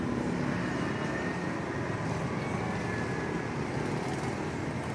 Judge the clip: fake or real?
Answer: real